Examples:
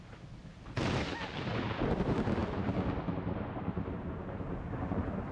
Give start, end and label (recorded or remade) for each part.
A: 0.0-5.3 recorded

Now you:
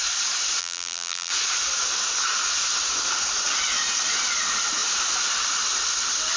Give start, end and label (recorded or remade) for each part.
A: 0.0-0.6 recorded; 0.6-1.3 remade; 1.3-6.4 recorded

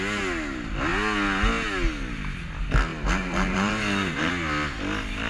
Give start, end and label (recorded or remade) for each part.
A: 0.0-2.9 recorded; 2.9-4.3 remade; 4.3-5.3 recorded

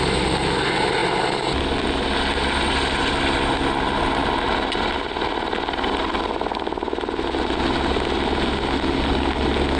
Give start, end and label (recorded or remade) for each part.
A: 0.0-9.8 recorded

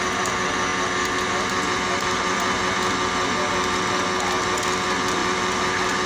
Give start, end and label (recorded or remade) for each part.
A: 0.0-5.2 recorded; 5.2-6.1 remade

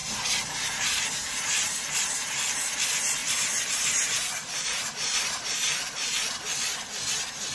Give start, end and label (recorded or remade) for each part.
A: 0.0-2.0 remade; 2.0-3.2 recorded; 3.2-6.3 remade; 6.3-7.5 recorded